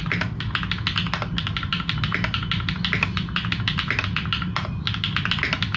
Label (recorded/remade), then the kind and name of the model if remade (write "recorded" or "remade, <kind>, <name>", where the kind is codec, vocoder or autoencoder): recorded